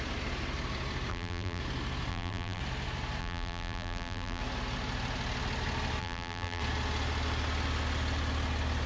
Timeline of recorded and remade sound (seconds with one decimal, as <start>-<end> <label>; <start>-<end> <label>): 0.0-1.1 recorded; 1.1-1.6 remade; 1.6-2.1 recorded; 2.1-2.6 remade; 2.6-3.2 recorded; 3.2-4.4 remade; 4.4-6.0 recorded; 6.0-6.6 remade; 6.6-8.9 recorded